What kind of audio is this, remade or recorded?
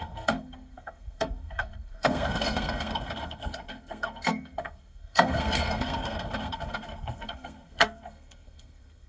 remade